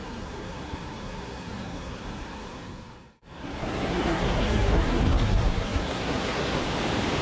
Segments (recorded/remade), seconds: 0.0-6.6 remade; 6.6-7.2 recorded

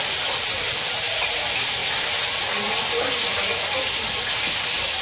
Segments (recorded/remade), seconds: 0.0-5.0 recorded